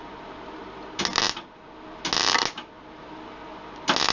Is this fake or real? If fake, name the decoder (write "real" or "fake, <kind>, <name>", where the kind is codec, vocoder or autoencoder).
real